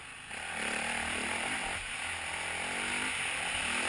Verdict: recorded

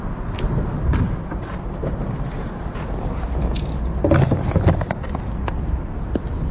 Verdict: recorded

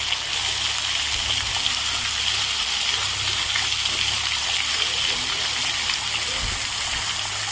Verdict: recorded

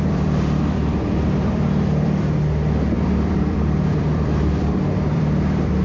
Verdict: remade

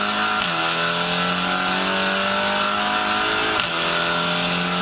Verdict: recorded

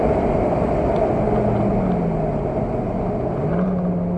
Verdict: recorded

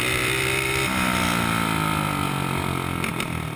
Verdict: recorded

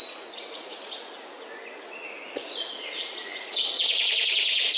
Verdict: remade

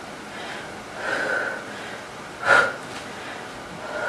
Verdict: recorded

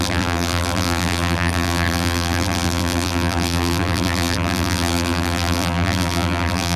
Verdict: remade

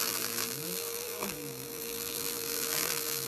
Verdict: remade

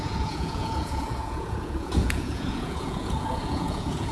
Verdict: remade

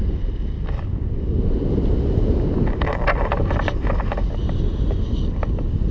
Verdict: recorded